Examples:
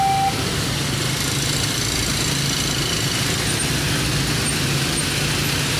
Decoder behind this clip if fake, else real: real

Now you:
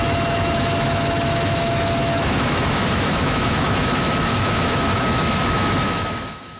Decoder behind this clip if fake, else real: fake, autoencoder, DAC-VAE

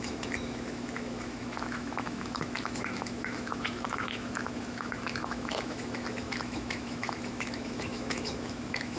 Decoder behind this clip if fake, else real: fake, autoencoder, DAC-VAE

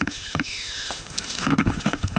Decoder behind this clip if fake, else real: fake, autoencoder, DAC-VAE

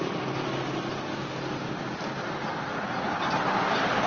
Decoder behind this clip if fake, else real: real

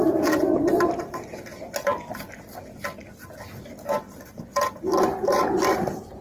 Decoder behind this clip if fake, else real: real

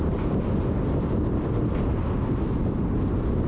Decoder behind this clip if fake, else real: real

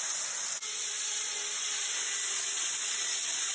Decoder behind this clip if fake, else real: real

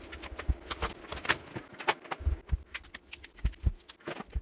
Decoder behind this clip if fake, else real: real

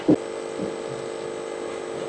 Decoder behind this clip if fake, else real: real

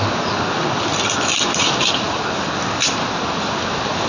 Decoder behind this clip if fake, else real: real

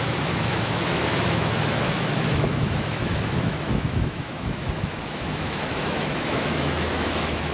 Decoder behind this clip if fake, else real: fake, autoencoder, DAC-VAE